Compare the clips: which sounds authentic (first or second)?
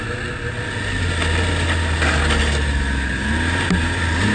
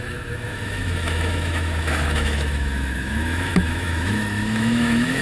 first